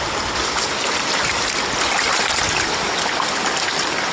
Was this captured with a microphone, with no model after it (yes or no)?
yes